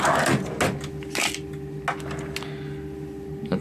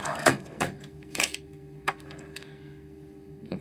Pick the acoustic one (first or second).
first